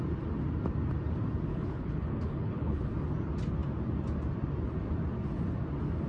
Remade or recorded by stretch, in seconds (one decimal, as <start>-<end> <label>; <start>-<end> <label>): 0.0-1.5 recorded; 1.5-2.9 remade; 2.9-6.1 recorded